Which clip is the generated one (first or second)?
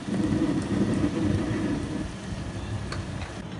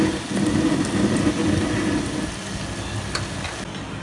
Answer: first